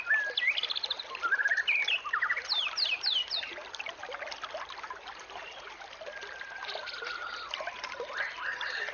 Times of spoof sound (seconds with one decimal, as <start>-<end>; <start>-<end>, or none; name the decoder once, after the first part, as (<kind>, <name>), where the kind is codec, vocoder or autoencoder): none